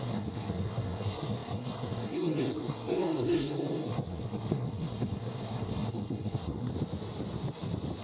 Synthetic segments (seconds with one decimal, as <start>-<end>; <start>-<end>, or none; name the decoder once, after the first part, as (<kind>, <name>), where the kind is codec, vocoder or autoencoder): 0.0-6.7 (codec, SNAC)